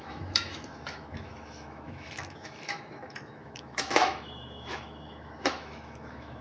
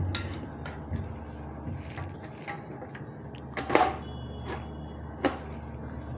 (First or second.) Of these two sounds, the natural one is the second